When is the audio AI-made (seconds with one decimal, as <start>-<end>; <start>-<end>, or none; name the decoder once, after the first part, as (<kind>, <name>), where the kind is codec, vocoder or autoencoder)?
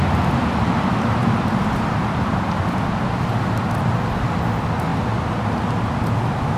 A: none